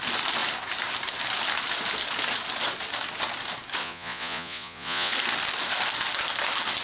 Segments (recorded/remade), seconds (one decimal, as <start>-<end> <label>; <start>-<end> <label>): 0.0-3.8 recorded; 3.8-5.1 remade; 5.1-6.8 recorded